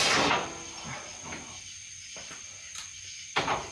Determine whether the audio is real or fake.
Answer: real